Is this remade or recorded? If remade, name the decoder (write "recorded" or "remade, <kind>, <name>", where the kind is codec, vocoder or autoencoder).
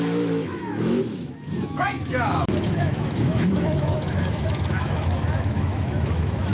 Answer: remade, autoencoder, DAC-VAE